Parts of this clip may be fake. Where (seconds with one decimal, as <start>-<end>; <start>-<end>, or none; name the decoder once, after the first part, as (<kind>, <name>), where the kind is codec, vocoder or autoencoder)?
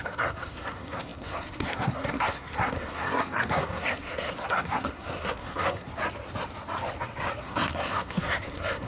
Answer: 0.0-5.9 (codec, SNAC); 7.4-8.9